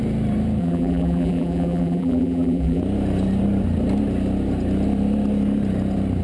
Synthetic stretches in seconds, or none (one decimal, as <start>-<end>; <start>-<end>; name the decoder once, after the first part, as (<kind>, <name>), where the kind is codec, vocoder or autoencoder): 0.6-2.8 (vocoder, BigVGAN v2)